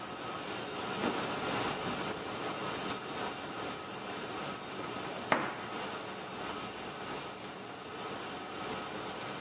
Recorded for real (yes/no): yes